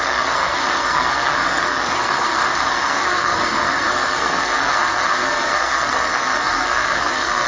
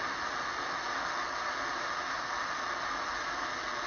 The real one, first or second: second